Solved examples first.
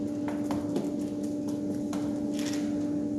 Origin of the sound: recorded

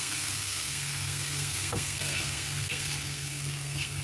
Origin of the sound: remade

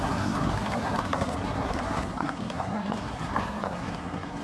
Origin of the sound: remade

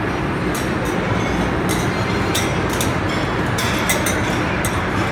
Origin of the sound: recorded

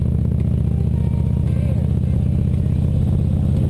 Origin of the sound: recorded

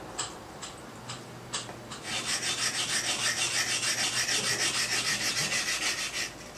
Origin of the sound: recorded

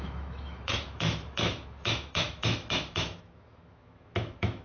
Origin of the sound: remade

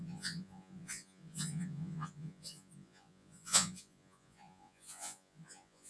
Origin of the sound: remade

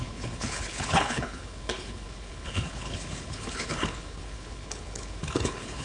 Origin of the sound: remade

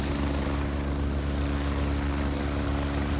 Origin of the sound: recorded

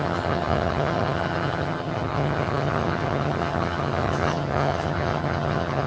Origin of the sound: remade